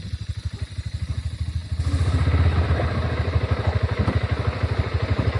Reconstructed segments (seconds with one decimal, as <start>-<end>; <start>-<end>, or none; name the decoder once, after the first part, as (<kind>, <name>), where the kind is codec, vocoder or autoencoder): none